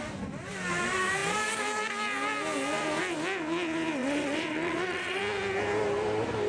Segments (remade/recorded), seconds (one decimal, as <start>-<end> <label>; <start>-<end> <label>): 0.0-4.0 recorded; 4.0-5.2 remade; 5.2-6.5 recorded